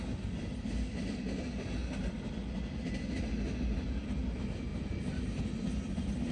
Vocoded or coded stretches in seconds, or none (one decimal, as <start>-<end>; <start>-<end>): 4.7-5.4